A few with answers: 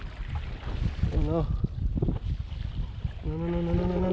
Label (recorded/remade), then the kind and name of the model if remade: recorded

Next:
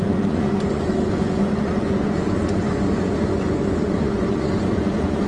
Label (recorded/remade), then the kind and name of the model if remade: remade, vocoder, Vocos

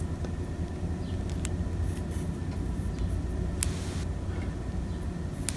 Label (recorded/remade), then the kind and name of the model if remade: recorded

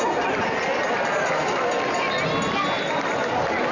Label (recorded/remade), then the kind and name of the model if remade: recorded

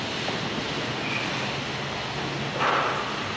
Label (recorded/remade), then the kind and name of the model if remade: recorded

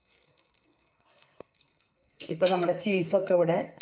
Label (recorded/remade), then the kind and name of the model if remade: remade, codec, SNAC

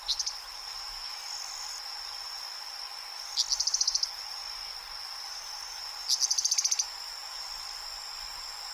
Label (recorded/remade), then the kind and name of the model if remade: recorded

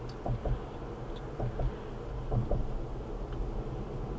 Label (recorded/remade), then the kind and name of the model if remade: recorded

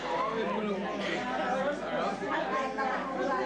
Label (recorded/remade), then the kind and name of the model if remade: recorded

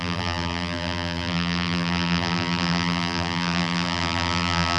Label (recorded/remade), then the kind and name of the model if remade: remade, vocoder, BigVGAN v2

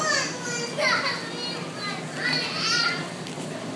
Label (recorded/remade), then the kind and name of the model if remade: recorded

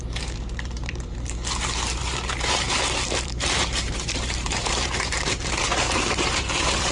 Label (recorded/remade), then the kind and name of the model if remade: remade, vocoder, BigVGAN v2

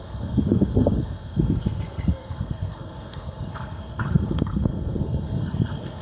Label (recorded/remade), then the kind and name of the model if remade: remade, codec, SNAC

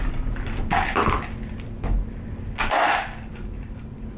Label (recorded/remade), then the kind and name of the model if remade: recorded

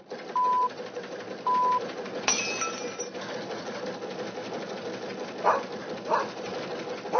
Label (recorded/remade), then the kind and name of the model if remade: recorded